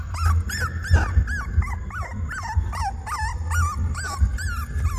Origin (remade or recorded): recorded